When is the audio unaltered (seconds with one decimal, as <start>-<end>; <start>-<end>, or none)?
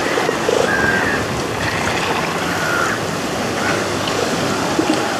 0.0-3.7; 4.5-5.2